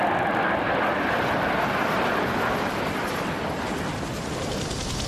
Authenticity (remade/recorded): remade